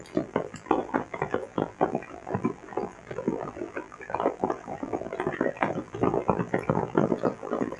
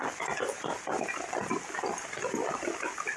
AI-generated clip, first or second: first